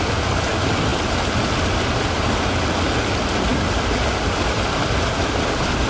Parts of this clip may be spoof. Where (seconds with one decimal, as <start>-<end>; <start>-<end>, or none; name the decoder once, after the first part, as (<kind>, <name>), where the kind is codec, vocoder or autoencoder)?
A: none